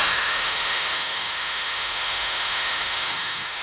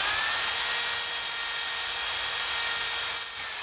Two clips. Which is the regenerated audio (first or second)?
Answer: first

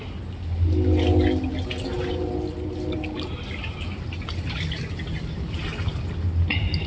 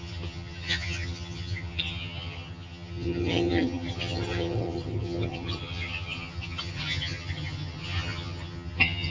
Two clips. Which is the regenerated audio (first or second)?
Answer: second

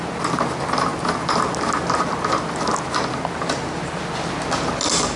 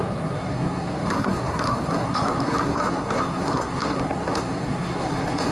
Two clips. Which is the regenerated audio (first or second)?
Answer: second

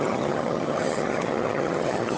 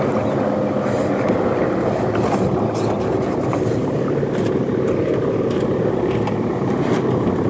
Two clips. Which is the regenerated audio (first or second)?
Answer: first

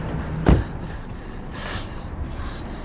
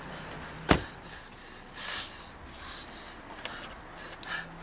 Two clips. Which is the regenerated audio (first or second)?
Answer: first